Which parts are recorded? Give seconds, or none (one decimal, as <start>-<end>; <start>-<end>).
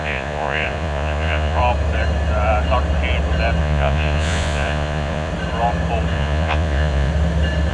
1.6-3.6; 5.3-6.1; 7.1-7.7